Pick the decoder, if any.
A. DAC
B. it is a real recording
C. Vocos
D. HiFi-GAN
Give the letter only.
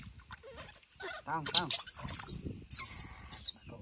B